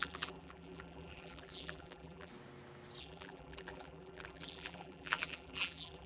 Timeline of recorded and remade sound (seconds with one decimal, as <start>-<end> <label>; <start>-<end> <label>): 0.0-2.3 remade; 2.3-3.0 recorded; 3.0-6.1 remade